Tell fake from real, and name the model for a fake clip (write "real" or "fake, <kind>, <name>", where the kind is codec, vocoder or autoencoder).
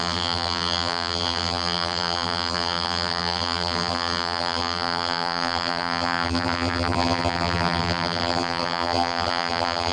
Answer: fake, vocoder, BigVGAN v2